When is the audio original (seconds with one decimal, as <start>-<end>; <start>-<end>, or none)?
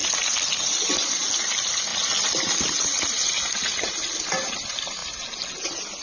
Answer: 0.0-6.0